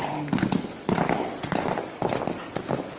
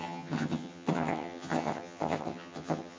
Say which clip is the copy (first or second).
second